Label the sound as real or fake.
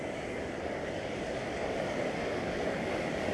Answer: fake